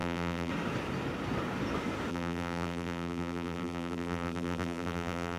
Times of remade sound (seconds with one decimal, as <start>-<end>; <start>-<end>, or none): 0.0-0.5; 2.1-5.4